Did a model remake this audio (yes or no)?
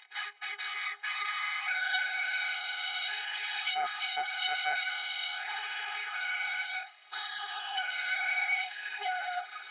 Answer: yes